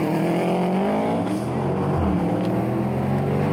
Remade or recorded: recorded